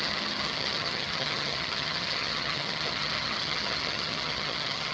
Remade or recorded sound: remade